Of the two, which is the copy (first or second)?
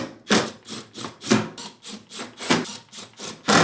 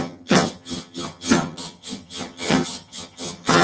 second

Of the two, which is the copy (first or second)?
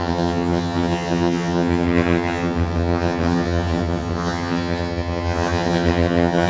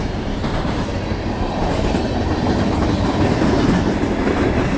first